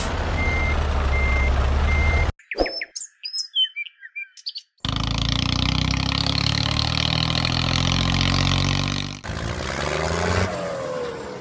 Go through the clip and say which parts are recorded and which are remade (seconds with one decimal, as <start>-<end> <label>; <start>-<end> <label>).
0.0-6.2 recorded; 6.2-6.9 remade; 6.9-11.4 recorded